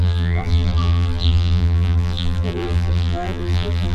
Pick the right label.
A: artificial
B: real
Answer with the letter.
A